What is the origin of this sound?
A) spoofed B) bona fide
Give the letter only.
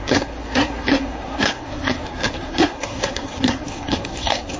A